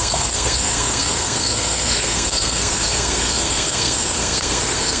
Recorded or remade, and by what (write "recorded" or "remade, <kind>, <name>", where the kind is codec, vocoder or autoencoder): remade, codec, SNAC